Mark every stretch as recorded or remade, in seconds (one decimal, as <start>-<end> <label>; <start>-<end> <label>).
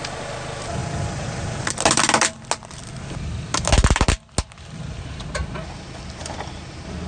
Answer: 0.0-7.1 recorded